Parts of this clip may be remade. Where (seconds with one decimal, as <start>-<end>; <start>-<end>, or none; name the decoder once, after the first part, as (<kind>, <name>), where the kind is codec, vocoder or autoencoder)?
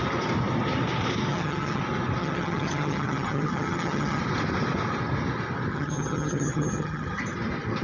1.3-1.8 (vocoder, HiFi-GAN); 2.2-4.2; 5.7-7.2